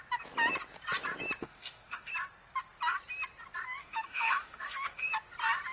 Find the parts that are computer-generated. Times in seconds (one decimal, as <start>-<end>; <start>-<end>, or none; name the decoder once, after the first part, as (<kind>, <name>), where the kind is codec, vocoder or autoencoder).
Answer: 1.4-2.1 (autoencoder, DAC-VAE); 3.8-5.1